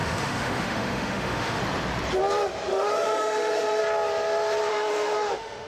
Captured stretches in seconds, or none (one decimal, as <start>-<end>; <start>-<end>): 1.6-2.7; 3.8-4.7